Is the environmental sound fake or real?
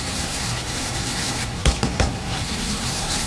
fake